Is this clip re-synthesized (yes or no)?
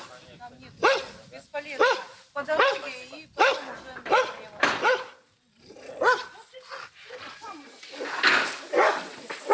no